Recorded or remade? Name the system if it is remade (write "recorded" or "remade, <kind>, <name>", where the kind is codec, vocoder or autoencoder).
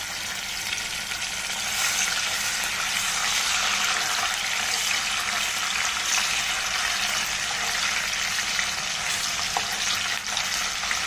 recorded